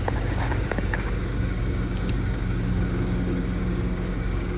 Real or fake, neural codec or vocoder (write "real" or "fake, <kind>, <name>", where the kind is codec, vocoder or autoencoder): fake, codec, DAC